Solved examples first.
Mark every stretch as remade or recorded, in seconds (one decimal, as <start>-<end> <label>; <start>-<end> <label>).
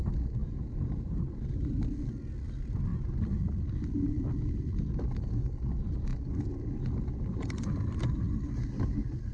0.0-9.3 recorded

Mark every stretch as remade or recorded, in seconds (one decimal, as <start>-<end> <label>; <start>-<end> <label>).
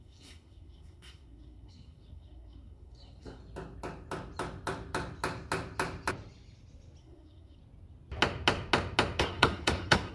0.0-3.4 remade; 3.4-7.0 recorded; 7.0-7.6 remade; 7.6-9.2 recorded; 9.2-10.1 remade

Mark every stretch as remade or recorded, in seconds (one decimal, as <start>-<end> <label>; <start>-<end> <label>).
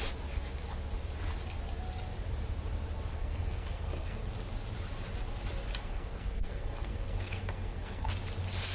0.0-3.1 recorded; 3.1-4.2 remade; 4.2-5.8 recorded; 5.8-8.1 remade; 8.1-8.7 recorded